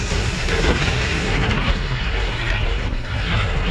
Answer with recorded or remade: remade